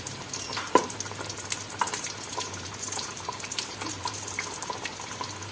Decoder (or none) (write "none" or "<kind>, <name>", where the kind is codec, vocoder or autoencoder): vocoder, BigVGAN v2